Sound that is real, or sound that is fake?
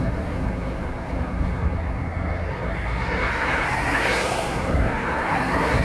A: fake